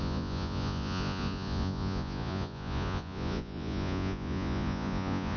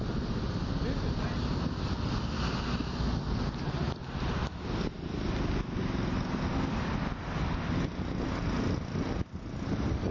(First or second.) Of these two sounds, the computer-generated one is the first